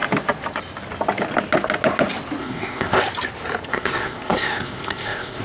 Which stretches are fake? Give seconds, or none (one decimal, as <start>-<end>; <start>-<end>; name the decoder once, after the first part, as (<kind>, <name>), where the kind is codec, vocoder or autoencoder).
2.4-3.0 (codec, ZipCodec); 3.7-5.4